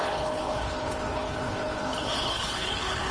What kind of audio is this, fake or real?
fake